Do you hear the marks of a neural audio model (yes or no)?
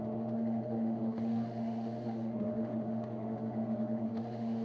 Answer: yes